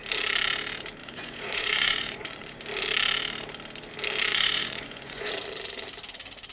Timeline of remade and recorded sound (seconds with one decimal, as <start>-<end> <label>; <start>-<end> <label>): 0.0-1.0 recorded; 1.0-2.6 remade; 2.6-4.3 recorded; 4.3-5.3 remade; 5.3-6.5 recorded

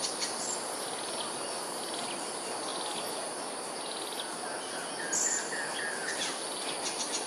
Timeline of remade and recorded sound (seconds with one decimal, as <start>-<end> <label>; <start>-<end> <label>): 0.0-2.7 remade; 2.7-7.3 recorded

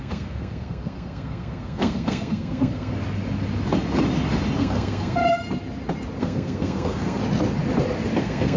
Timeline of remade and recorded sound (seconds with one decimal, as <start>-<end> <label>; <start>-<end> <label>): 0.0-2.9 remade; 2.9-4.6 recorded; 4.6-5.2 remade; 5.2-6.2 recorded; 6.2-7.2 remade; 7.2-8.2 recorded; 8.2-8.6 remade

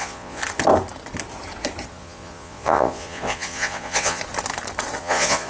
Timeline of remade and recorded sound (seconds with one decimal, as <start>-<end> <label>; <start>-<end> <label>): 0.0-0.4 remade; 0.4-1.9 recorded; 1.9-4.2 remade; 4.2-5.0 recorded; 5.0-5.5 remade

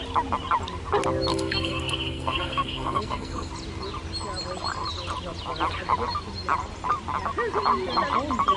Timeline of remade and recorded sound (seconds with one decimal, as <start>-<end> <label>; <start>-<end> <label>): 0.0-1.3 recorded; 1.3-3.5 remade; 3.5-8.6 recorded

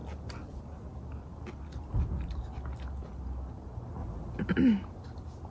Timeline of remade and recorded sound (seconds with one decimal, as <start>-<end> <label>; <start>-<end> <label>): 0.0-5.5 recorded

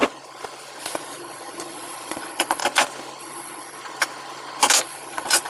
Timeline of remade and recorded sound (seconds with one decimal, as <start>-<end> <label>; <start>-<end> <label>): 0.0-0.8 recorded; 0.8-2.6 remade; 2.6-3.2 recorded; 3.2-3.8 remade; 3.8-4.8 recorded; 4.8-5.5 remade

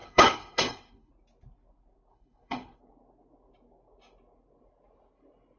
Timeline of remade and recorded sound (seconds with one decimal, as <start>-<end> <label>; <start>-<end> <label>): 0.0-1.1 remade; 1.1-2.1 recorded; 2.1-2.8 remade; 2.8-5.6 recorded